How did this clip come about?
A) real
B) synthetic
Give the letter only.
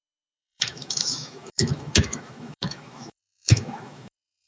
B